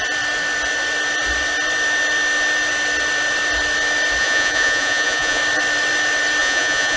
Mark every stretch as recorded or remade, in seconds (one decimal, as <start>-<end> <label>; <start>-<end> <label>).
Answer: 0.0-4.2 recorded; 4.2-5.4 remade; 5.4-6.4 recorded; 6.4-7.0 remade